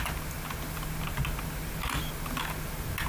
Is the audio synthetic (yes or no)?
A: no